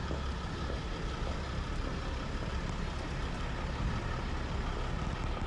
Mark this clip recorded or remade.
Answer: recorded